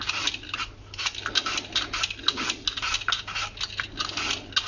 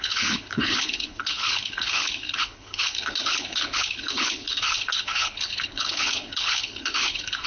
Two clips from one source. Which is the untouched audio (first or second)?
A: first